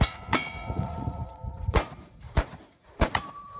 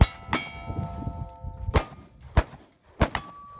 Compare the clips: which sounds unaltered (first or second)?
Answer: second